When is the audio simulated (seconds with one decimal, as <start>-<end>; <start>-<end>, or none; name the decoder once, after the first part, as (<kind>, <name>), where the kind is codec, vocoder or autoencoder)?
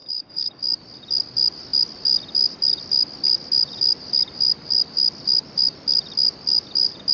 0.0-0.6 (codec, HILCodec)